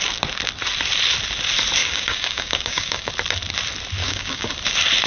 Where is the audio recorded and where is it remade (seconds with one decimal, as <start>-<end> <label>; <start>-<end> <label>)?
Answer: 0.0-1.8 recorded; 1.8-3.1 remade; 3.1-4.0 recorded; 4.0-4.5 remade; 4.5-5.1 recorded